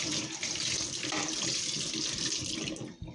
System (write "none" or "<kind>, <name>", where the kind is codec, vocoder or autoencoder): none